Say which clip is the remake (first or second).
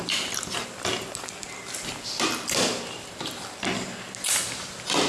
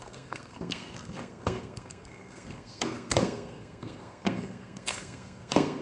second